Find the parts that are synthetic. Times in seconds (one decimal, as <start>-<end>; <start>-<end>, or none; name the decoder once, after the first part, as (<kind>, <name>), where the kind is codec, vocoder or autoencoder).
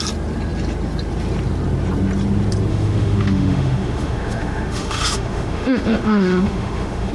2.7-7.1 (autoencoder, DAC-VAE)